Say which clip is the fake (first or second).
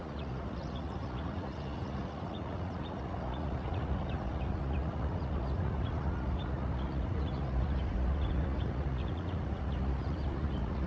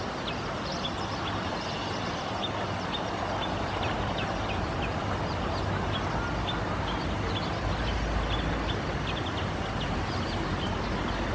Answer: first